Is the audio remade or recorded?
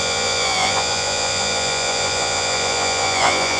remade